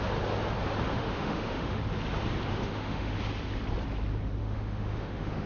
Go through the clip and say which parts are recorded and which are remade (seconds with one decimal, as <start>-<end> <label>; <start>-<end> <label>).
0.0-0.9 recorded; 0.9-1.8 remade; 1.8-2.5 recorded; 2.5-3.2 remade; 3.2-4.4 recorded; 4.4-5.5 remade